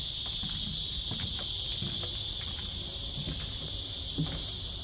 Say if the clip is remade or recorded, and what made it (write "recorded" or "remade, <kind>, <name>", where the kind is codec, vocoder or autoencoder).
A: recorded